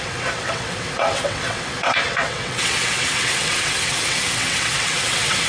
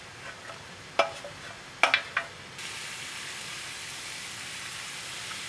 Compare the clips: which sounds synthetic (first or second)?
first